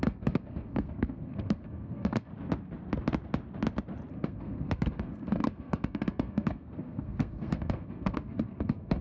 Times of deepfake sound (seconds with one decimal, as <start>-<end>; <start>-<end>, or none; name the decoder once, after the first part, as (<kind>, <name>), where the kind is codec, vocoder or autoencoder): 0.0-2.3 (codec, SNAC); 4.1-9.0